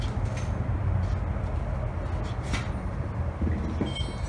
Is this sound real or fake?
real